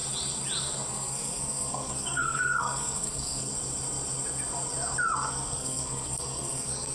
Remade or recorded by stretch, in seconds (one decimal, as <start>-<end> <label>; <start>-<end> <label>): 0.0-0.9 recorded; 0.9-3.5 remade; 3.5-5.3 recorded; 5.3-6.9 remade